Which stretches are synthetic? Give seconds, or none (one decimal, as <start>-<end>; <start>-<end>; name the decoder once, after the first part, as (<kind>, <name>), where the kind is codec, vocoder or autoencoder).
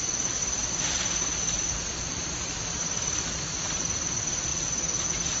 0.0-0.4 (vocoder, BigVGAN v2); 3.6-4.5